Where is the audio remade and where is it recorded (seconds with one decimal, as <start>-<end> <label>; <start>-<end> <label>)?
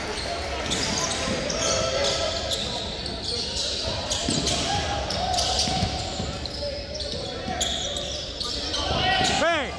0.0-9.8 recorded